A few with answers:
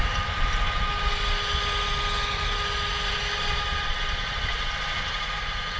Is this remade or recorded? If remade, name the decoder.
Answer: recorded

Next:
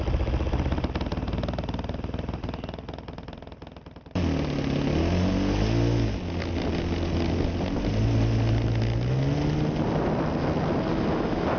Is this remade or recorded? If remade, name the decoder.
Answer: recorded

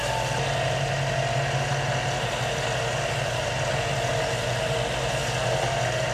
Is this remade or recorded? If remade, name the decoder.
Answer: recorded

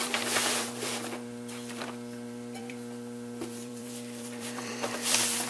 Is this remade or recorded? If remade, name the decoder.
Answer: remade, vocoder, BigVGAN v2